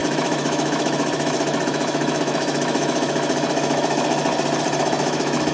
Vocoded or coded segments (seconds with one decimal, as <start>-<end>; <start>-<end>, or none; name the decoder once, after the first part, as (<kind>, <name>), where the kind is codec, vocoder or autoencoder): 0.0-4.2 (autoencoder, DAC-VAE); 4.8-5.5